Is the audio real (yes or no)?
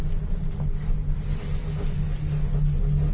yes